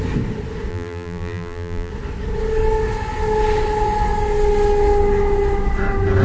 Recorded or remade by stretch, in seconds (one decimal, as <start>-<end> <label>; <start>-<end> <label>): 0.0-0.7 recorded; 0.7-1.9 remade; 1.9-6.2 recorded